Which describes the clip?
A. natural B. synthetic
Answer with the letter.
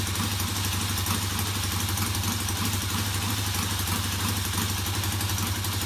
A